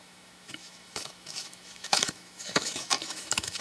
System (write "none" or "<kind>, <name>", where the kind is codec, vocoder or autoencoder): autoencoder, DAC-VAE